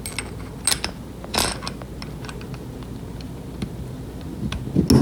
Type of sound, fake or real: real